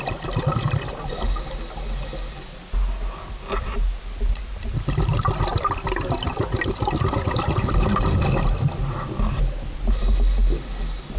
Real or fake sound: real